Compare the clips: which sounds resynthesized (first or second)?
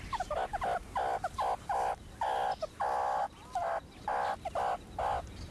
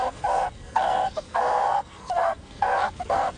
second